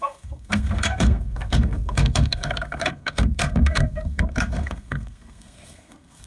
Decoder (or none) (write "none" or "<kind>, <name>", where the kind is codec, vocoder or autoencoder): codec, SNAC